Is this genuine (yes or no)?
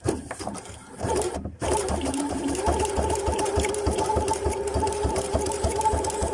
no